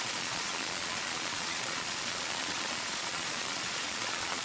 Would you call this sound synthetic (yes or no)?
yes